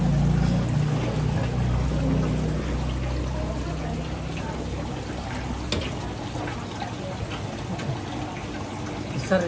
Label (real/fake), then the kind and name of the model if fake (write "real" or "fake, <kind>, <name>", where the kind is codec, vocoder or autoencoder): real